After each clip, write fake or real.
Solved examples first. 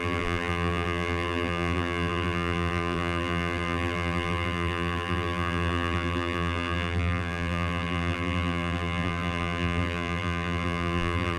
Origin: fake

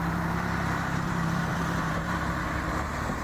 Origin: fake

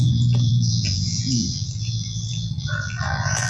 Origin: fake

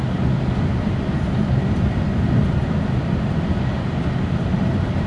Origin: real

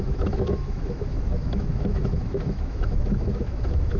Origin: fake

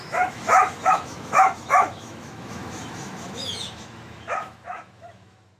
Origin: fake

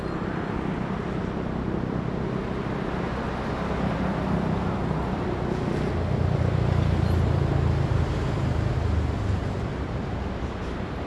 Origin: real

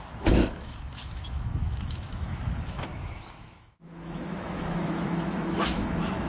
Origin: fake